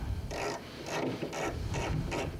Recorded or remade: recorded